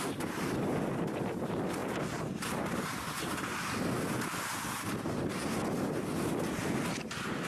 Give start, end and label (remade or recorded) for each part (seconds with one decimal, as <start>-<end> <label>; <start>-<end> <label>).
0.0-7.5 recorded